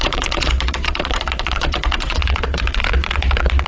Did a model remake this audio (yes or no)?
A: yes